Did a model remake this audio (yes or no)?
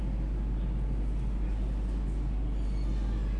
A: no